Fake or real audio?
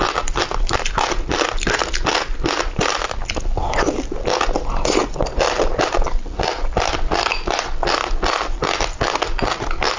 real